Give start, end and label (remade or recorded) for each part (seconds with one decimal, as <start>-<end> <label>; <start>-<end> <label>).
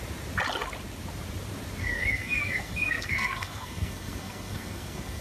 0.0-1.8 recorded; 1.8-5.2 remade